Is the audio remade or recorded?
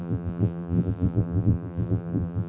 remade